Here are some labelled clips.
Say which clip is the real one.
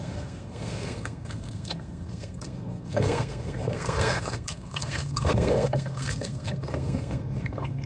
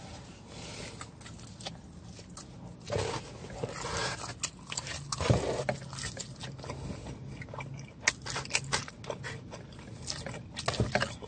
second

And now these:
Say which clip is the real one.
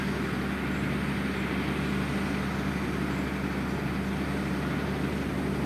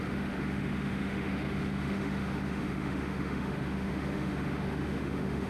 first